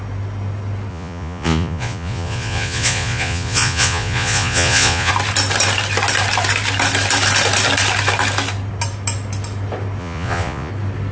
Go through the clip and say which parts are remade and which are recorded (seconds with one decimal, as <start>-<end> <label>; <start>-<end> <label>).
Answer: 0.0-0.9 recorded; 0.9-5.1 remade; 5.1-10.0 recorded; 10.0-10.7 remade; 10.7-11.1 recorded